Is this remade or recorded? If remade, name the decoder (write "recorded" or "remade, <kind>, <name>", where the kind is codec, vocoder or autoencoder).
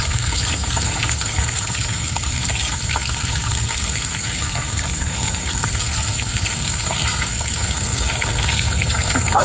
remade, codec, SNAC